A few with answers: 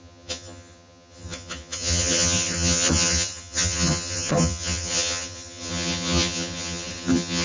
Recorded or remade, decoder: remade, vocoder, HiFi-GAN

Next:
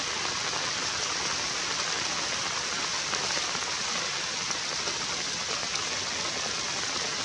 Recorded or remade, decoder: recorded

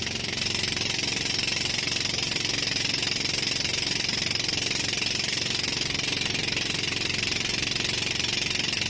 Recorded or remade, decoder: recorded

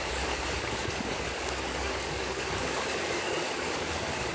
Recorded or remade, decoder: remade, codec, DAC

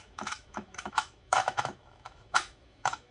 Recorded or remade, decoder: remade, autoencoder, DAC-VAE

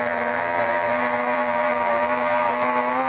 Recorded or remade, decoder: remade, vocoder, BigVGAN v2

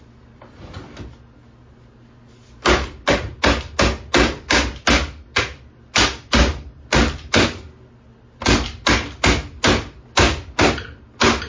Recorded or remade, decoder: recorded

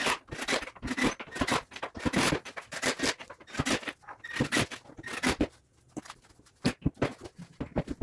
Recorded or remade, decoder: recorded